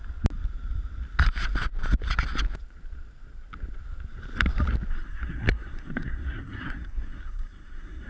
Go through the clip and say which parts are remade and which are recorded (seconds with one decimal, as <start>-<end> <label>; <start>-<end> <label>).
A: 0.0-4.9 recorded; 4.9-8.1 remade